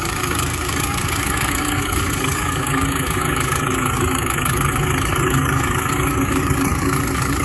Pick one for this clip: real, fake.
fake